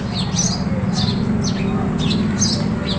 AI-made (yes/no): no